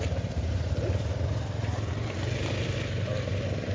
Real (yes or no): yes